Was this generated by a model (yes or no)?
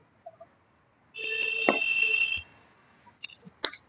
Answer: no